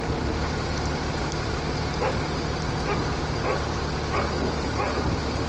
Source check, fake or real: real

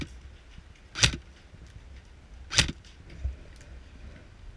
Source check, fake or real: real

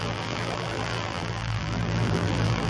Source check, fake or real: fake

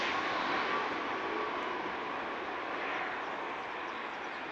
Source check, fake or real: real